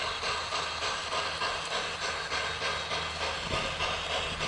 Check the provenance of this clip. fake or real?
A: real